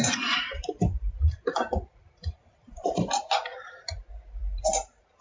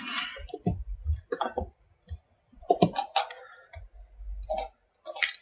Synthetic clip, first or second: first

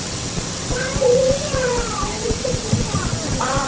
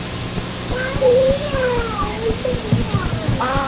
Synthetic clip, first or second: first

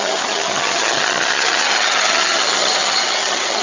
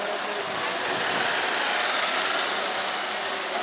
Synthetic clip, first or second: first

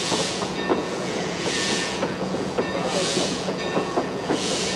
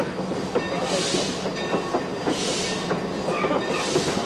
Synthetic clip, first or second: first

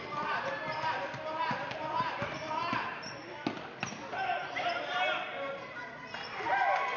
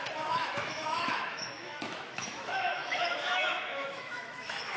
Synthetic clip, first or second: second